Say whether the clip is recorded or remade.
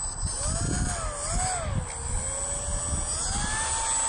recorded